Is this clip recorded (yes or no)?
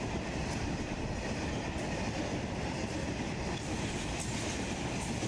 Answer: yes